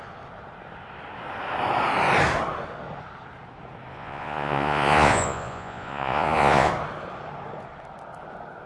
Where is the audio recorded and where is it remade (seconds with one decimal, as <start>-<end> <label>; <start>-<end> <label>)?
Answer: 0.0-3.9 recorded; 3.9-6.7 remade; 6.7-8.7 recorded